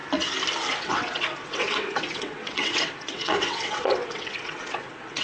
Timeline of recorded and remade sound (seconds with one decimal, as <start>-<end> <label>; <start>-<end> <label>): 0.0-0.8 recorded; 0.8-5.2 remade